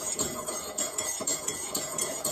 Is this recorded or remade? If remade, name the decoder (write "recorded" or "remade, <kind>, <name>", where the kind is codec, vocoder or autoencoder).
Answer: remade, vocoder, Vocos